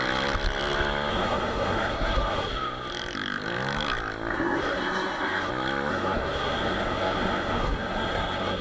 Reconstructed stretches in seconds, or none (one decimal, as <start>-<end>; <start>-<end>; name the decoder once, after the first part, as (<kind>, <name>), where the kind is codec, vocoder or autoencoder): 1.1-2.5 (codec, SNAC); 4.3-5.5; 5.9-8.6